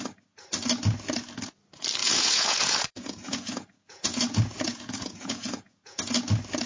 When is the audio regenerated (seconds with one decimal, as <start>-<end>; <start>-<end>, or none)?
2.0-6.0